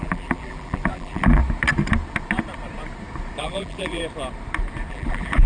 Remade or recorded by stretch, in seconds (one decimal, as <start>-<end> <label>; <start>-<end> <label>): 0.0-1.4 remade; 1.4-3.4 recorded; 3.4-4.0 remade; 4.0-4.9 recorded; 4.9-5.5 remade

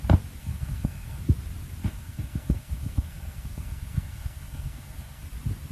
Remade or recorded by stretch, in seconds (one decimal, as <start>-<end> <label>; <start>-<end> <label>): 0.0-0.4 recorded; 0.4-1.2 remade; 1.2-1.8 recorded; 1.8-5.2 remade; 5.2-5.7 recorded

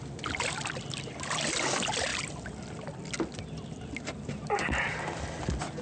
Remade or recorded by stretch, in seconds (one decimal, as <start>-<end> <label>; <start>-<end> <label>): 0.0-5.8 recorded

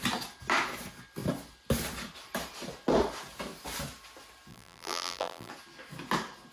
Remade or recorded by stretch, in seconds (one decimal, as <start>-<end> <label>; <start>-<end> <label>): 0.0-4.5 recorded; 4.5-5.5 remade; 5.5-6.5 recorded

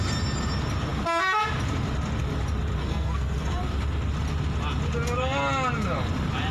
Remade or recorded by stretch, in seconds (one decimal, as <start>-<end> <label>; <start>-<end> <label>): 0.0-2.8 recorded; 2.8-3.6 remade; 3.6-6.5 recorded

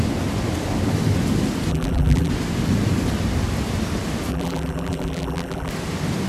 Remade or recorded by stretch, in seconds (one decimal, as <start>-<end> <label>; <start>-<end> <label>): 0.0-1.7 recorded; 1.7-2.3 remade; 2.3-4.3 recorded; 4.3-5.7 remade; 5.7-6.3 recorded